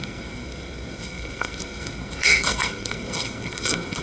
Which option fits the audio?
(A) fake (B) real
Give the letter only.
A